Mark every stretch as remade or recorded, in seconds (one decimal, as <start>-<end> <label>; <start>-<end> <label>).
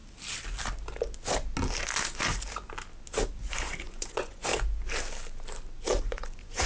0.0-3.4 recorded; 3.4-4.5 remade; 4.5-6.0 recorded; 6.0-6.7 remade